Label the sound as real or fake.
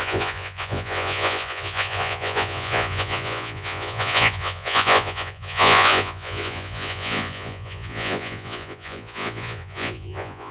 fake